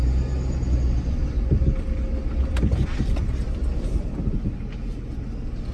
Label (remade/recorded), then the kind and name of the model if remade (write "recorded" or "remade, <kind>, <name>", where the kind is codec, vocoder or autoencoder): recorded